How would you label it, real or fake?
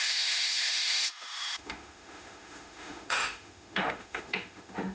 fake